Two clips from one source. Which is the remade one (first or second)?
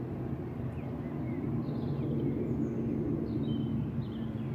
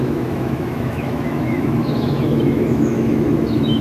second